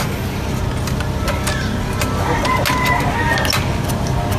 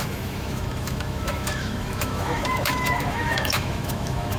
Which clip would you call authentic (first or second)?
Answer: first